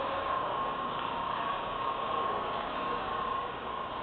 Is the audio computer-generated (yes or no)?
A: yes